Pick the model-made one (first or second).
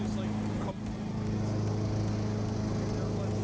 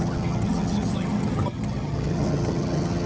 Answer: second